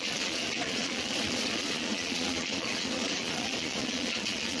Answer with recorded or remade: remade